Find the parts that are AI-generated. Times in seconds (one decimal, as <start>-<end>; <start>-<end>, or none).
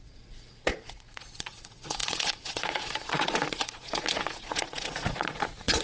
0.0-5.8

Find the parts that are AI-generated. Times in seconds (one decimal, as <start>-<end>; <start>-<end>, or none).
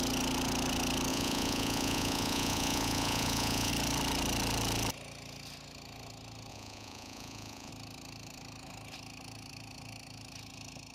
1.1-3.7; 6.5-7.7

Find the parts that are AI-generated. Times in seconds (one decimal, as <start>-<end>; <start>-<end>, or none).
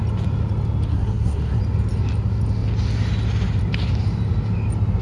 0.9-1.6